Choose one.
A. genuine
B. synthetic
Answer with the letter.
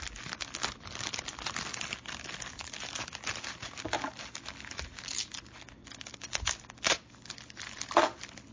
A